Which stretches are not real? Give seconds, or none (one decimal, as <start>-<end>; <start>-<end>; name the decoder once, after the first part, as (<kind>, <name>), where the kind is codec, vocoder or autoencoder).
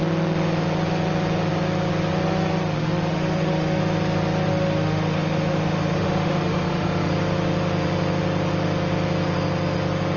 3.1-3.8 (autoencoder, DAC-VAE); 4.5-7.1